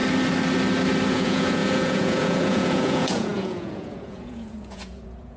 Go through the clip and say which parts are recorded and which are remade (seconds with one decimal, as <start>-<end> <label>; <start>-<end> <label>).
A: 0.0-1.1 recorded; 1.1-5.4 remade